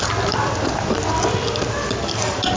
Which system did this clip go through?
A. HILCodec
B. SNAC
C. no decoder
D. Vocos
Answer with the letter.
C